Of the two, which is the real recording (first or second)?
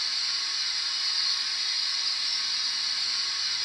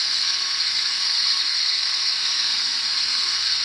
first